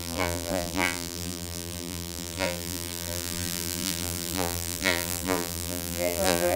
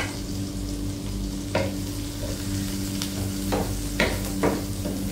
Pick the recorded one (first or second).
second